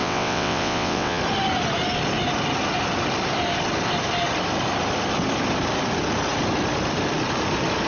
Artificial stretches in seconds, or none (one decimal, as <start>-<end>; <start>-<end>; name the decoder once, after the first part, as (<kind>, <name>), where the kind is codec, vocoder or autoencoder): 0.0-1.2 (vocoder, WaveNeXt)